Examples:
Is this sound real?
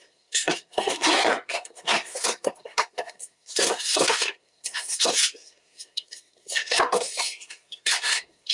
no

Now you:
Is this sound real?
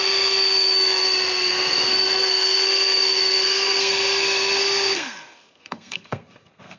no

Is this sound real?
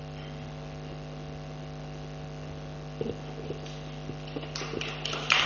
yes